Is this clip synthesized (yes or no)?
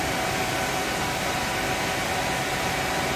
no